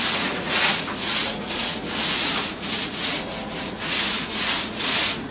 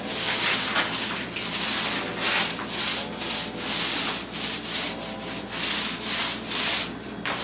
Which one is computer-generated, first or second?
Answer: first